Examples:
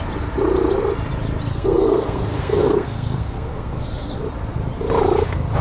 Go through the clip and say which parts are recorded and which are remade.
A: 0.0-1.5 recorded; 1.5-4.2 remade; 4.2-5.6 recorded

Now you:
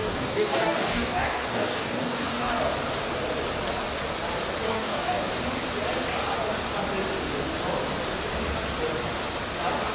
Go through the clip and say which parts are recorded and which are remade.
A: 0.0-2.6 remade; 2.6-4.7 recorded; 4.7-5.3 remade; 5.3-9.9 recorded

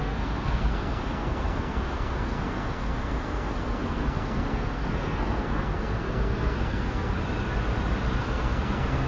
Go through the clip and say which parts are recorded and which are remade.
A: 0.0-7.2 remade; 7.2-8.2 recorded; 8.2-9.1 remade

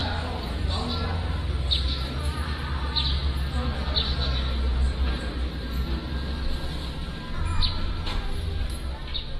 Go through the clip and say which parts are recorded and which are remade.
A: 0.0-0.6 remade; 0.6-4.7 recorded; 4.7-5.7 remade; 5.7-9.4 recorded

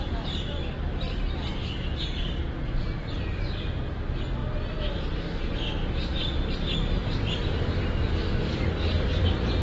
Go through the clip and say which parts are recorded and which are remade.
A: 0.0-1.6 recorded; 1.6-2.4 remade; 2.4-8.1 recorded; 8.1-9.2 remade; 9.2-9.6 recorded

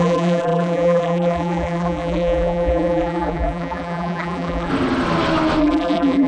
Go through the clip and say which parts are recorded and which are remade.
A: 0.0-4.7 remade; 4.7-5.6 recorded; 5.6-6.3 remade

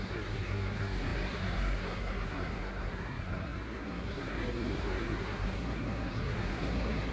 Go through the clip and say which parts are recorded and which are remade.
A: 0.0-7.1 remade